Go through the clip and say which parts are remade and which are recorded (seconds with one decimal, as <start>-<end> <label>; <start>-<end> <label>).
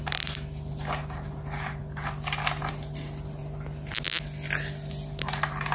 0.0-5.7 recorded